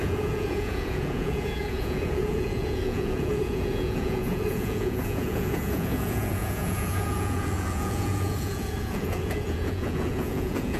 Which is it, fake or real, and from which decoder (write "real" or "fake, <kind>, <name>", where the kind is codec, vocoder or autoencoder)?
fake, vocoder, Vocos